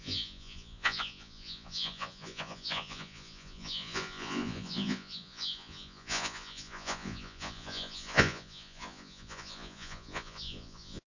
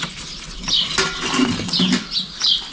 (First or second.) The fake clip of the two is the first